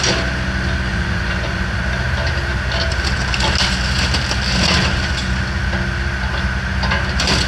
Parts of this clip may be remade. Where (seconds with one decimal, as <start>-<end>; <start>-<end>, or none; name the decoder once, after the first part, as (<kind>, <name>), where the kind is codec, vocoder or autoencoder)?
0.9-1.8 (vocoder, Vocos)